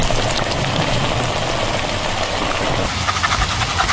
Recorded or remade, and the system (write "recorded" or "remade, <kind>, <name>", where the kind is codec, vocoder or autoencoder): recorded